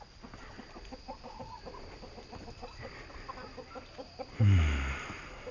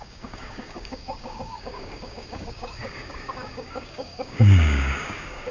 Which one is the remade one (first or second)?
second